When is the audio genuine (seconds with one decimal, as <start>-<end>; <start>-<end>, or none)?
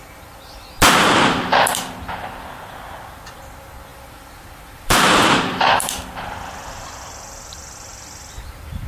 0.0-3.9; 8.5-8.9